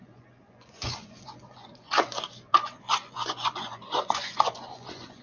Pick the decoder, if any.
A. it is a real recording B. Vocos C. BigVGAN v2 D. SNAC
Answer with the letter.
B